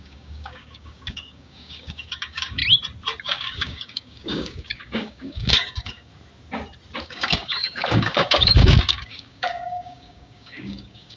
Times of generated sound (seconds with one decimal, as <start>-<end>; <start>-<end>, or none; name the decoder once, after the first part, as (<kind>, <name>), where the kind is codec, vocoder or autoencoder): 0.0-2.6 (codec, DAC); 3.2-6.1; 7.0-11.2